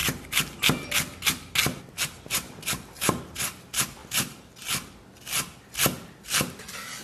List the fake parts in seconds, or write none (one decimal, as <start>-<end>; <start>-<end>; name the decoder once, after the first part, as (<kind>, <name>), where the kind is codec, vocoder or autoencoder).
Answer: 4.0-4.5 (vocoder, BigVGAN v2)